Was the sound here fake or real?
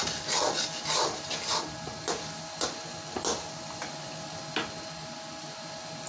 real